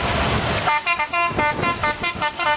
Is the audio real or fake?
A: real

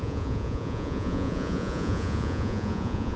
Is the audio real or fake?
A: fake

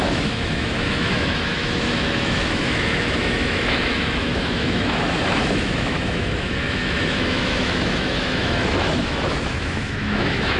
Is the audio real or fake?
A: fake